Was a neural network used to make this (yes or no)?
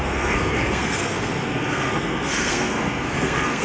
yes